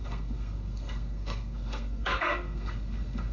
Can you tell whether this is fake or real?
fake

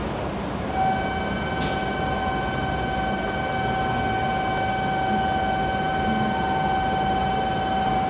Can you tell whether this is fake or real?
real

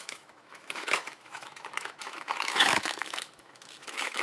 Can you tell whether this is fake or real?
fake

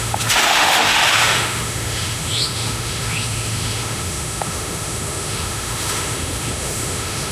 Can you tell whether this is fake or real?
fake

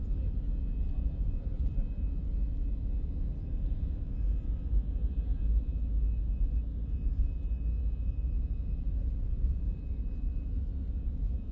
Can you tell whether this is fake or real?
real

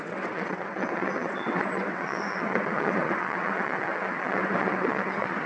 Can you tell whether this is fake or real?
fake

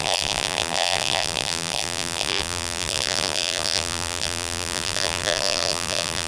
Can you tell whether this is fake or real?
fake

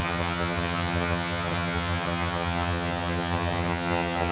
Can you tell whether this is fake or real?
fake